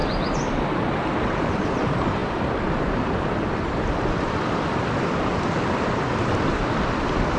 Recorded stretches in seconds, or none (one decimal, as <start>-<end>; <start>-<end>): 0.0-1.2